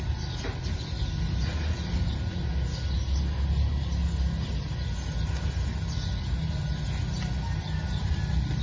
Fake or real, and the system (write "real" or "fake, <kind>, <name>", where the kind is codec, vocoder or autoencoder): real